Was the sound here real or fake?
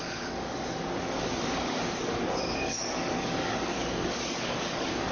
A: fake